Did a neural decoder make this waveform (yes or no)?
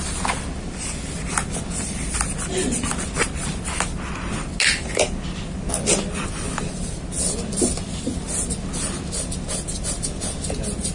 no